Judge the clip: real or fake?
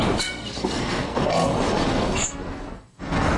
fake